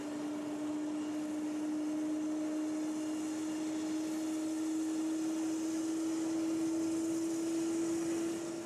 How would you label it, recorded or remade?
recorded